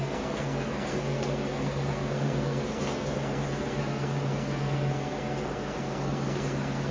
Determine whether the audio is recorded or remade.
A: remade